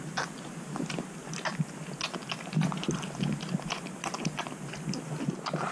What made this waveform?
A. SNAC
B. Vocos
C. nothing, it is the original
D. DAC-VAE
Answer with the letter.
C